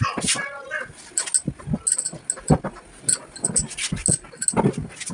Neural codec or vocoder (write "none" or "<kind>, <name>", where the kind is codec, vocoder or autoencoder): none